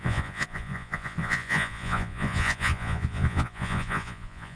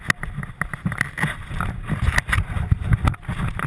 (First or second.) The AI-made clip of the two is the first